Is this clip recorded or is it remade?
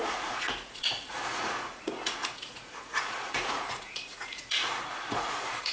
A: remade